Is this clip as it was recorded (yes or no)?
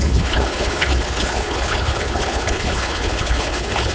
no